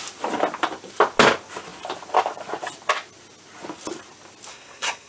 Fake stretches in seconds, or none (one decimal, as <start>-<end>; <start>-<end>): 4.5-5.1